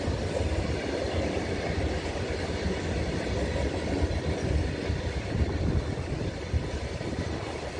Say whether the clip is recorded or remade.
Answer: recorded